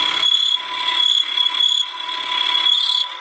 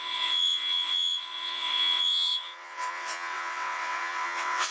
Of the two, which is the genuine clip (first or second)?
first